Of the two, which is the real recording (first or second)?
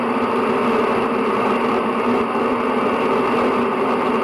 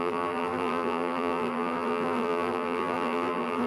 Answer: first